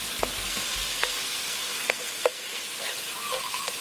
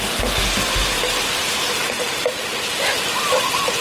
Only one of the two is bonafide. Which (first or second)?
second